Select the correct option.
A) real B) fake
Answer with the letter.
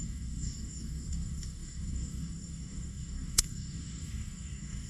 B